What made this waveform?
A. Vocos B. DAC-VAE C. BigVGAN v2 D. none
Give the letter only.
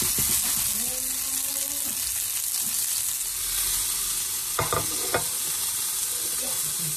D